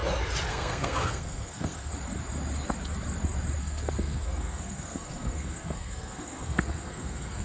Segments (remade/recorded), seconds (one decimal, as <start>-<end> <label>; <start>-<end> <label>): 0.0-0.5 recorded; 0.5-1.9 remade; 1.9-3.6 recorded; 3.6-7.4 remade